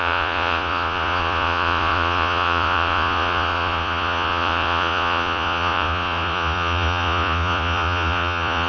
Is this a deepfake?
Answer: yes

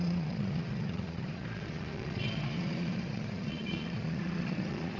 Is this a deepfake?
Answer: yes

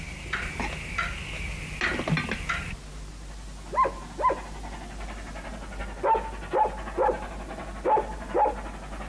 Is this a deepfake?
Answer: no